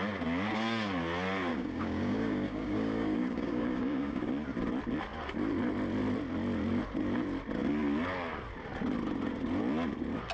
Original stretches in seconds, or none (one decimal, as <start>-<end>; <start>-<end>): 0.0-1.5; 4.3-10.3